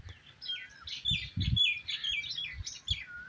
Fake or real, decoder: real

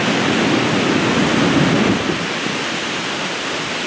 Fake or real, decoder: real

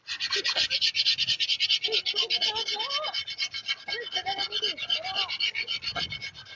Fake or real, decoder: real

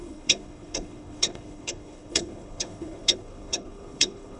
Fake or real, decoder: fake, codec, HILCodec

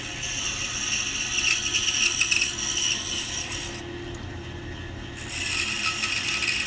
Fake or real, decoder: real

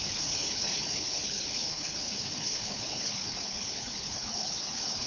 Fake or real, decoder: fake, codec, HILCodec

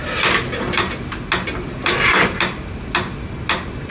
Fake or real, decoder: real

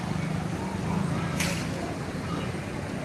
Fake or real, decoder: real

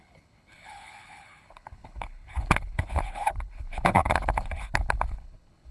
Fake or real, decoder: fake, codec, HILCodec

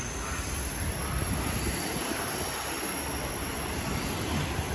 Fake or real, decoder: real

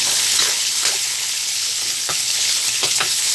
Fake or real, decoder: fake, codec, HILCodec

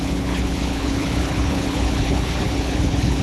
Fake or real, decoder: fake, codec, HILCodec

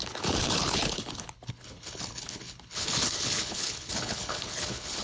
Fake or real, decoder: fake, codec, HILCodec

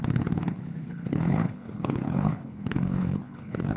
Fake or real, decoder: fake, codec, HILCodec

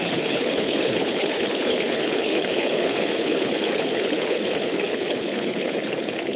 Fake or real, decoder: fake, codec, HILCodec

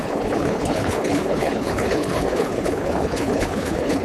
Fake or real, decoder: fake, codec, HILCodec